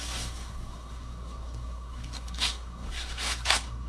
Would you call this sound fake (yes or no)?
yes